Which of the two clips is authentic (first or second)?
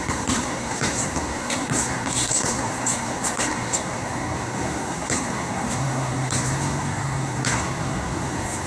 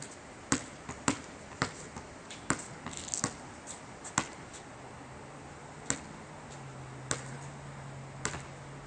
second